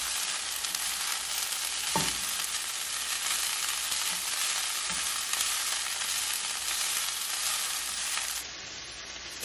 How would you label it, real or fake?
real